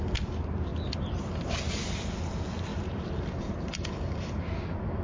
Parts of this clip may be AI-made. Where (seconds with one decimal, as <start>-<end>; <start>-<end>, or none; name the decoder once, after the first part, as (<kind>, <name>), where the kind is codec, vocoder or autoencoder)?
2.7-4.4 (vocoder, BigVGAN v2)